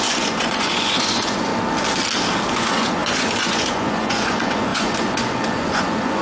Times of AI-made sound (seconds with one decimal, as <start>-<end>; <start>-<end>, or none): 0.0-1.5; 2.5-6.2